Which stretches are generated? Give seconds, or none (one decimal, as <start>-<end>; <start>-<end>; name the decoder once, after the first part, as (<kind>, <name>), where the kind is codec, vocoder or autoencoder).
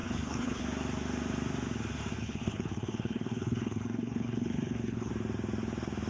0.0-0.6 (codec, HILCodec); 2.2-5.1